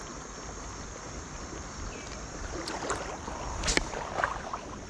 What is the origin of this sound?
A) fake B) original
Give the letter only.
B